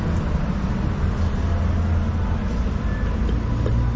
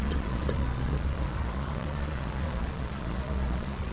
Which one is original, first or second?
first